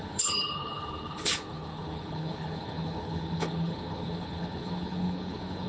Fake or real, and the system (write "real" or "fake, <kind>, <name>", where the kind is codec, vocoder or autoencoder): fake, codec, HILCodec